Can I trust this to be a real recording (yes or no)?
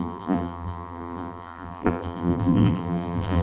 no